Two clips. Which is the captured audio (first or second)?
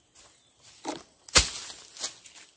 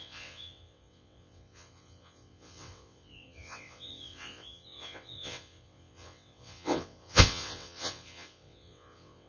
first